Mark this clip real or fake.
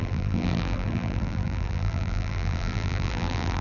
fake